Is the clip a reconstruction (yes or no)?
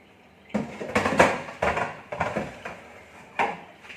no